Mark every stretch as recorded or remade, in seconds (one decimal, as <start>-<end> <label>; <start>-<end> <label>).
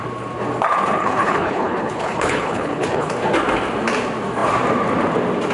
0.0-1.0 recorded; 1.0-3.1 remade; 3.1-5.5 recorded